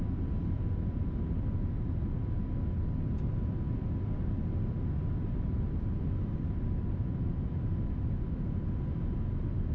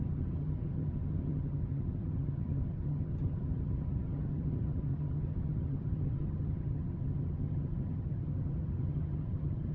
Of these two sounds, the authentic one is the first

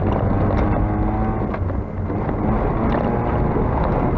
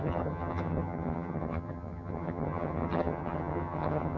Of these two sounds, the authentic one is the first